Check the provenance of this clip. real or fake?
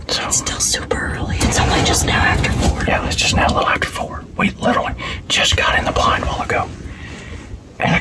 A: fake